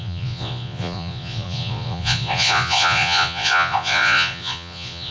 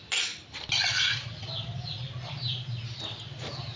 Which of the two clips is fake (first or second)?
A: first